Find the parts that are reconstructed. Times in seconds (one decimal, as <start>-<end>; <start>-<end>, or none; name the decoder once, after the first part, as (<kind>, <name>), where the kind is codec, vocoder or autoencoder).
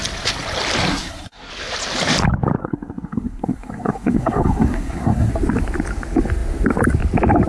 0.9-1.5 (codec, SNAC); 2.6-5.3